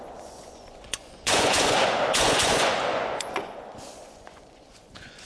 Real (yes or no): no